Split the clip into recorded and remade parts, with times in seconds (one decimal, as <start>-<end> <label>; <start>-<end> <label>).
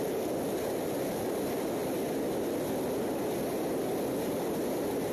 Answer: 0.0-5.1 recorded